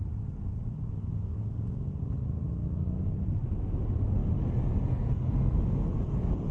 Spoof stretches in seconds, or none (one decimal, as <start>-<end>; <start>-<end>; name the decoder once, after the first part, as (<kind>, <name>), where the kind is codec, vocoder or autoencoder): none